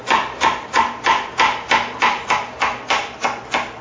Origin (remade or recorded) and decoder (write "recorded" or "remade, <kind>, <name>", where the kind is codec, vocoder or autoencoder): remade, vocoder, BigVGAN v2